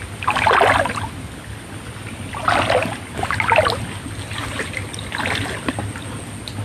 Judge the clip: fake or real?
real